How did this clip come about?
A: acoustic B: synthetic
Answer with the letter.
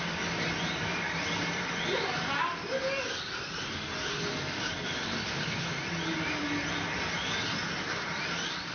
A